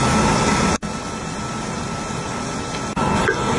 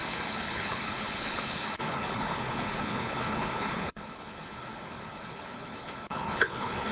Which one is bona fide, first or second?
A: first